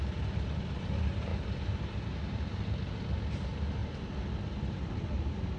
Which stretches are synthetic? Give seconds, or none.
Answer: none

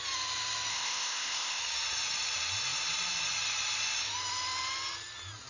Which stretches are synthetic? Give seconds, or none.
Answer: 0.7-1.6 (codec, ZipCodec)

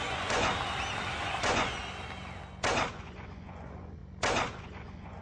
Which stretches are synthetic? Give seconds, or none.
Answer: 0.0-0.5 (vocoder, Vocos); 1.2-1.8; 2.9-4.0; 4.6-5.2